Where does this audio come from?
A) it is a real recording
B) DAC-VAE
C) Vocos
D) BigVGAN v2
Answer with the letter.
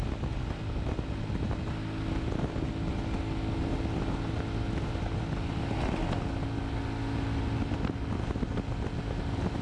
A